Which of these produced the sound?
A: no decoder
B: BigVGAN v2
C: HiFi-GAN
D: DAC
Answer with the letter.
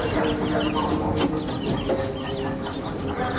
A